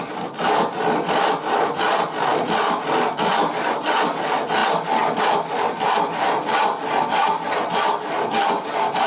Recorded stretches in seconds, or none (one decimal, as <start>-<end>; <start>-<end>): 0.0-9.1